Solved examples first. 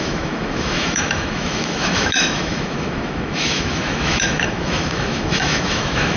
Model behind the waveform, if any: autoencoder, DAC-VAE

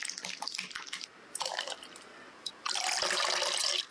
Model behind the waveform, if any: none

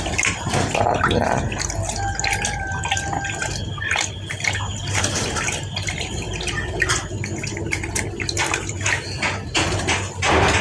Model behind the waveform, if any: none